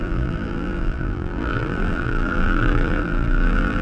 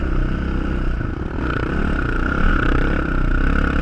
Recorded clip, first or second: second